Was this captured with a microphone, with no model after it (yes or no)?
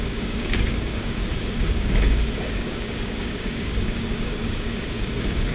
no